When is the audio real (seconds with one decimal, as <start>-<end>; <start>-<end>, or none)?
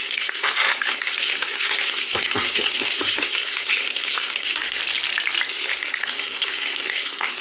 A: 4.8-5.5